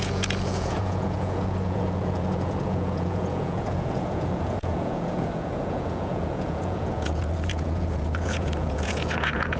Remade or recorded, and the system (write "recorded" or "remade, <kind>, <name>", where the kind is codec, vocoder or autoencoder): remade, vocoder, Vocos